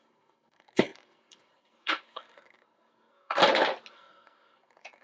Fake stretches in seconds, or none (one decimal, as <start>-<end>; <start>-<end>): 0.0-3.4; 3.9-5.0